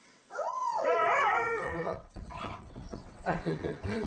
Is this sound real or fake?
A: fake